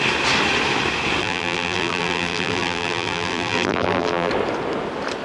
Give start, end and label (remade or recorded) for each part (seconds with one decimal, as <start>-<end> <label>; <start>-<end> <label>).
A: 0.0-1.2 recorded; 1.2-4.3 remade; 4.3-5.2 recorded